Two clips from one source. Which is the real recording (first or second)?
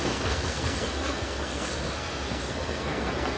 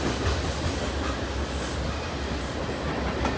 second